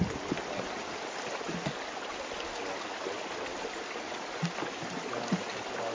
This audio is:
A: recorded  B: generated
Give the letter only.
A